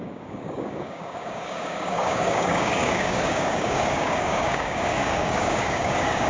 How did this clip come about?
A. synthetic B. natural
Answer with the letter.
A